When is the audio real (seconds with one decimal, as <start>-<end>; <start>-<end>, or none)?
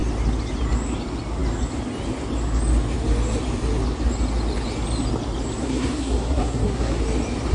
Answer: 0.0-5.6; 7.0-7.5